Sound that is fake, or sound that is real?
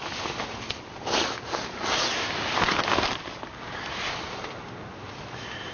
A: real